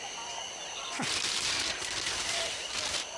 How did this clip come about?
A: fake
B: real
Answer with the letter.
B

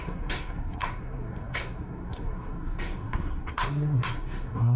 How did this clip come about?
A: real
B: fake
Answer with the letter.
B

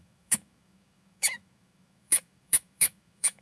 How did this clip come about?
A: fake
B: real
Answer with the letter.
A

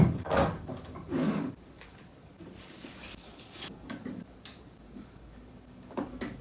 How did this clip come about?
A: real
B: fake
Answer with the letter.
B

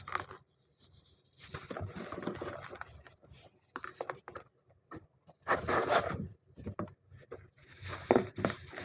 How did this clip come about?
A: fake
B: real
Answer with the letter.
B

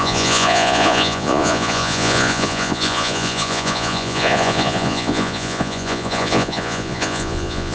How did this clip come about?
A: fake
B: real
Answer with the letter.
A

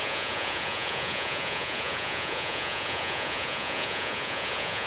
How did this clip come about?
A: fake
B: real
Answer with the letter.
A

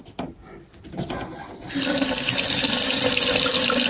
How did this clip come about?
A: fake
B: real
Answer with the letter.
B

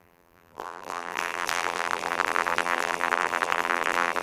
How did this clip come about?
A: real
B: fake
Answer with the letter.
B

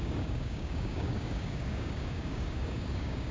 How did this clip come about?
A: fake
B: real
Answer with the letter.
A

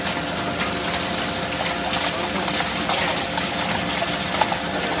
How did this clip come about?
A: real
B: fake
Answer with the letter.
A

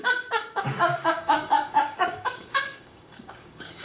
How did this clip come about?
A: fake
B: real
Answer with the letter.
A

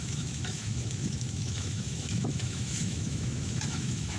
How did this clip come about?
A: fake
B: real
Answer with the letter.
A